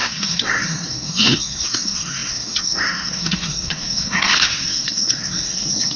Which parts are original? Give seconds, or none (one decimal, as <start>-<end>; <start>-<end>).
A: none